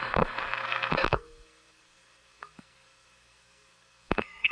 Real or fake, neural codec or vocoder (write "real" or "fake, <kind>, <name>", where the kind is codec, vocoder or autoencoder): fake, codec, SNAC